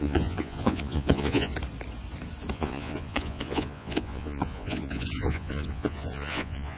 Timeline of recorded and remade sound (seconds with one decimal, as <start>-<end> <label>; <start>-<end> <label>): 0.0-1.5 remade; 1.5-2.5 recorded; 2.5-6.8 remade